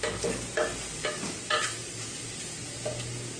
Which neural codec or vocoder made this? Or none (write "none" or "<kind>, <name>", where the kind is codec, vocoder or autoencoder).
none